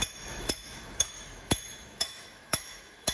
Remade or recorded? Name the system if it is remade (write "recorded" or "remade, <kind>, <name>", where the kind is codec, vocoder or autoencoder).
remade, autoencoder, DAC-VAE